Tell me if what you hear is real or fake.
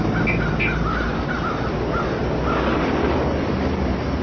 real